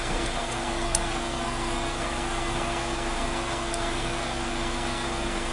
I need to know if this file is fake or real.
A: fake